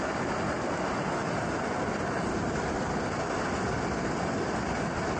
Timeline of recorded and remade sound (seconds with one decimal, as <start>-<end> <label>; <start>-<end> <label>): 0.0-5.2 recorded